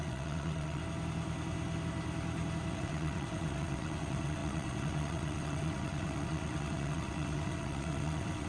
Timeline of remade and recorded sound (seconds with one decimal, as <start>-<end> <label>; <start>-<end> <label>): 0.0-0.8 remade; 0.8-2.7 recorded; 2.7-8.5 remade